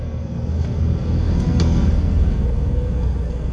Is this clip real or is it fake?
fake